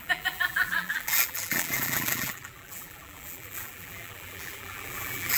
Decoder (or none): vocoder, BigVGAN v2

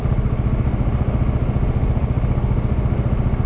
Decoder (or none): none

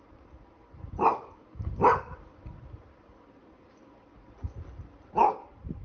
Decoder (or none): none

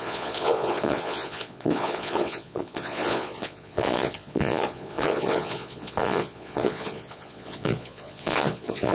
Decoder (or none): vocoder, Vocos